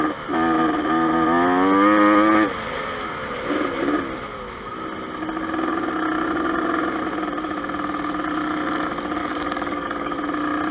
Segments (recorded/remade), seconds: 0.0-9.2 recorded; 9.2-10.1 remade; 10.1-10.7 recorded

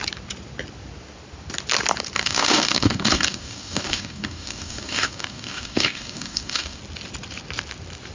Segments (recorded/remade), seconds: 0.0-2.2 recorded; 2.2-6.8 remade; 6.8-8.1 recorded

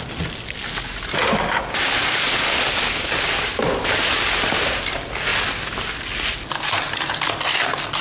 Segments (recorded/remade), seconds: 0.0-8.0 recorded